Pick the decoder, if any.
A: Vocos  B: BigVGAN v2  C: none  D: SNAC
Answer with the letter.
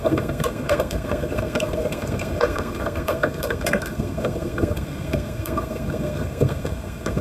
D